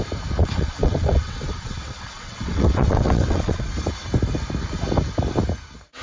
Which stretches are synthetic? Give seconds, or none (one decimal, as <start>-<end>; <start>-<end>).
0.4-3.6